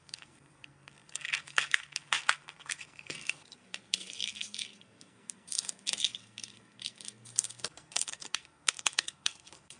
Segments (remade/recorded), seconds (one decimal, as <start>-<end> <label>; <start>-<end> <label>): 0.0-9.8 remade